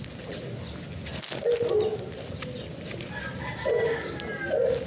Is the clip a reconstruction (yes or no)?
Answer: no